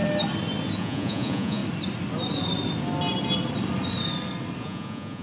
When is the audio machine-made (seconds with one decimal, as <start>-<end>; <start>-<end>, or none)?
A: 0.8-1.6; 4.6-5.2